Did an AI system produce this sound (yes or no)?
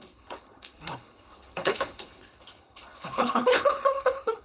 yes